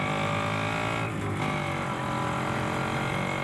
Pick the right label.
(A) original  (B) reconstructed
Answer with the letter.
A